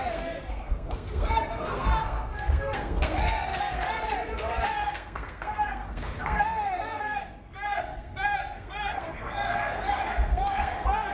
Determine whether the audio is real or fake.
fake